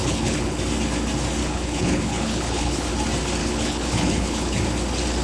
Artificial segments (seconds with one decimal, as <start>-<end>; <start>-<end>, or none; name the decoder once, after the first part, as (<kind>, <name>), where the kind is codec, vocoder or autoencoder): 0.0-0.6 (codec, HILCodec); 1.4-2.9; 3.4-4.6